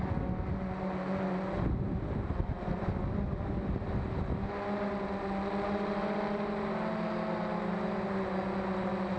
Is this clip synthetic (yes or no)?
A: no